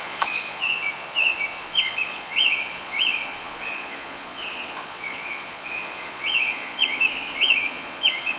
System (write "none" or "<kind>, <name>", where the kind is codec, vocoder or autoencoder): vocoder, Vocos